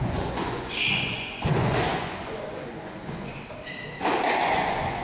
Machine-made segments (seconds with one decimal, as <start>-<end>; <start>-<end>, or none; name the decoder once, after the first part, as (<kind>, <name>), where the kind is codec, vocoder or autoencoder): 0.0-3.3 (vocoder, Vocos); 4.0-5.0